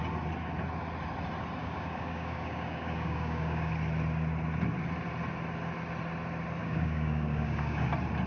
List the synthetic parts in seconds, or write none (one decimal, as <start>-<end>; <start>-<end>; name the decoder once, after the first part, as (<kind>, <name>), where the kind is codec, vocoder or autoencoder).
1.6-3.7 (codec, DAC); 6.6-7.9